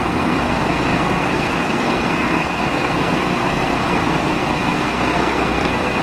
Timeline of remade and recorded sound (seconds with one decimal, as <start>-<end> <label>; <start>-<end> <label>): 0.0-6.0 remade